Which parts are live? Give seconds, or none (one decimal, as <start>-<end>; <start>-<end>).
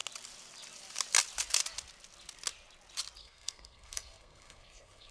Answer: 0.0-3.2